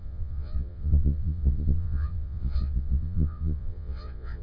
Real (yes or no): no